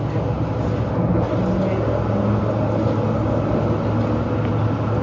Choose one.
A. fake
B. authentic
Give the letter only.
B